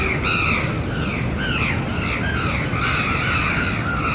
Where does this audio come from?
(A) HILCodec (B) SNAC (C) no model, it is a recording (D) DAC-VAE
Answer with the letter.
C